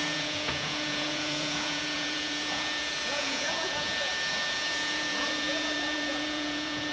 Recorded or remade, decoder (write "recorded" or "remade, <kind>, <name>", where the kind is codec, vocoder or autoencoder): remade, vocoder, Vocos